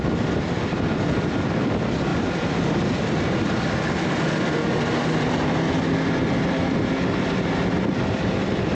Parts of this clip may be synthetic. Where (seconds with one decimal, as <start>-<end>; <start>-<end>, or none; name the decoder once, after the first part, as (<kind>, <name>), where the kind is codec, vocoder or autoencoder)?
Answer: none